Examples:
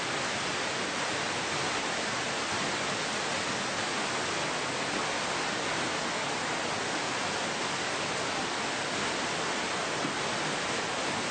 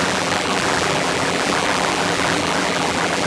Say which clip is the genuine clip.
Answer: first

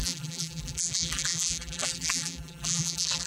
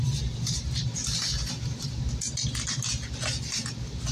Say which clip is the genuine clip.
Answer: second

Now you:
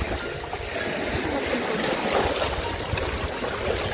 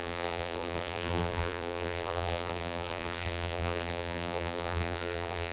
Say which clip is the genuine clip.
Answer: first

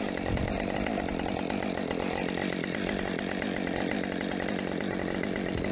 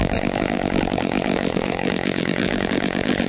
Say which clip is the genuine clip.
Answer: first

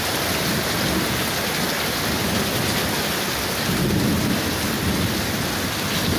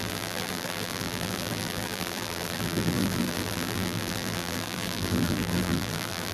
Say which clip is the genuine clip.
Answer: first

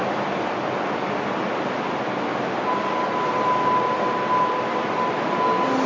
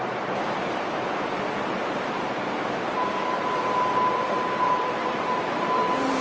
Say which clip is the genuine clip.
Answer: first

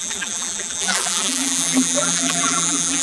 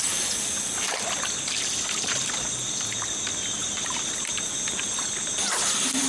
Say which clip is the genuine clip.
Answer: second